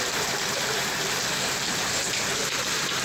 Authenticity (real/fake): fake